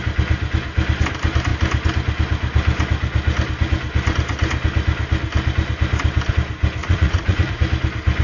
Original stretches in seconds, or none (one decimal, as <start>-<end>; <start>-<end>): 0.0-6.8; 7.6-8.2